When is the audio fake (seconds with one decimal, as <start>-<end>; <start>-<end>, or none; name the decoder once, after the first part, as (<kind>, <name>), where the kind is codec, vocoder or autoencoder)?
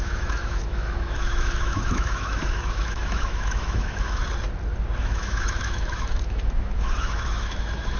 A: 0.0-4.2 (autoencoder, DAC-VAE); 5.0-8.0